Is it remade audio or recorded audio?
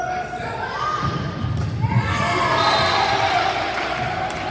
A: recorded